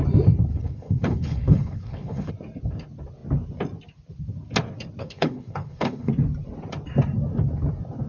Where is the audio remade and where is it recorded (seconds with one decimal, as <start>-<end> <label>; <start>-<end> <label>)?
0.0-0.5 recorded; 0.5-2.3 remade; 2.3-5.0 recorded; 5.0-6.1 remade; 6.1-8.1 recorded